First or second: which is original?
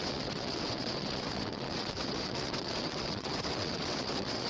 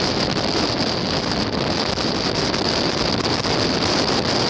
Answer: second